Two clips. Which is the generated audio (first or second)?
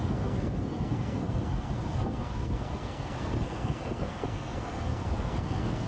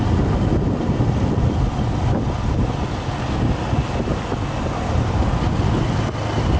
first